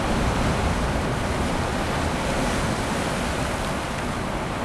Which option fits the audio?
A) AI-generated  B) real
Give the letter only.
B